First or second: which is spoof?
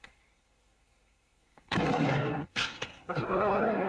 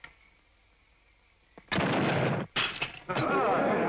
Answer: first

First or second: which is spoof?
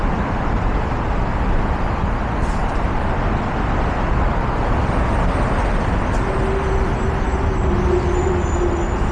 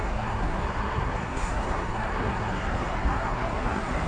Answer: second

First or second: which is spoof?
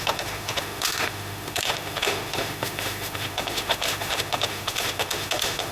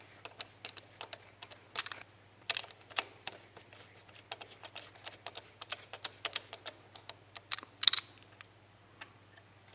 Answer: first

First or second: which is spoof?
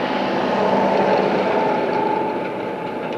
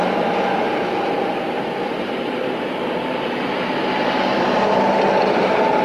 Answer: second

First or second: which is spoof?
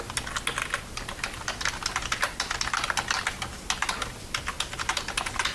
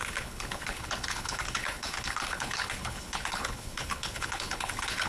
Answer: second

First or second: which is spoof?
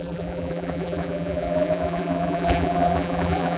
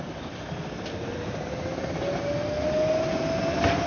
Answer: first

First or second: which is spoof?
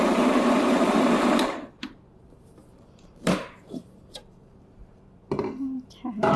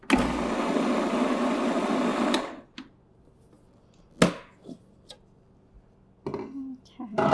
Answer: first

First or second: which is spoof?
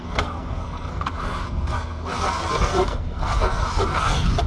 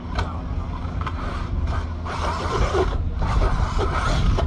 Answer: first